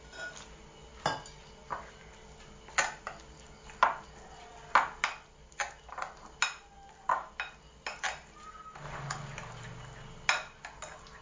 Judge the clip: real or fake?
real